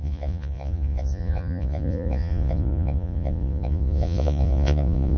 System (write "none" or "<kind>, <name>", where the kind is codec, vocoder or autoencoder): vocoder, Vocos